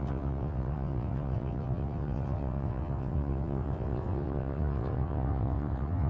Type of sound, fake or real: fake